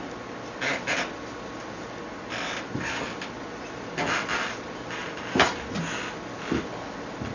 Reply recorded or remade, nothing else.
recorded